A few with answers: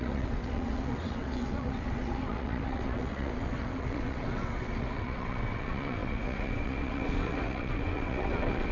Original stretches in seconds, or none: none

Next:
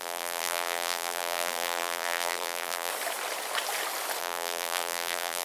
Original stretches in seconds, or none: 2.9-4.2

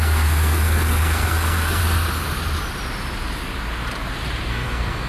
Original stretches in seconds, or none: 1.8-4.5